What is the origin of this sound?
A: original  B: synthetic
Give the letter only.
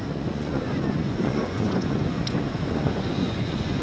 B